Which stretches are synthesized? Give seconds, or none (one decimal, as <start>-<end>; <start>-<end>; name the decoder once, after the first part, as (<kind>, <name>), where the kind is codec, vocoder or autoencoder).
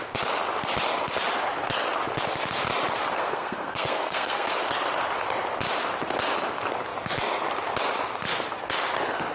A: 3.2-4.5 (codec, SNAC)